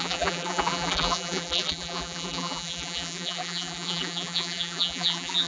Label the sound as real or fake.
fake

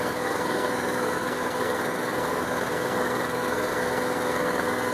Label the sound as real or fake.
fake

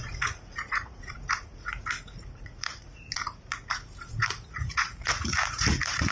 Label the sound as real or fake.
fake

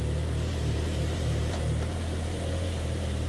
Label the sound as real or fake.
fake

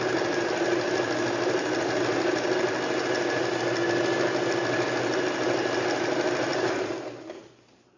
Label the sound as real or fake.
real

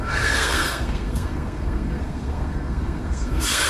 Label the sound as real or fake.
fake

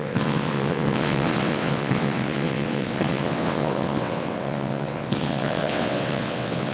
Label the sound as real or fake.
fake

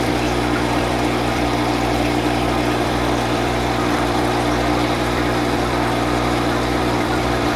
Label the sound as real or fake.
fake